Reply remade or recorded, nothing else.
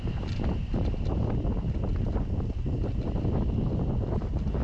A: recorded